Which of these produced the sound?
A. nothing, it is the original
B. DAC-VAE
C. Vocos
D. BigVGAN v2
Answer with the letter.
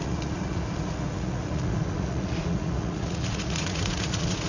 C